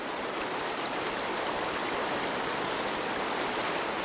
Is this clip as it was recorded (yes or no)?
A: yes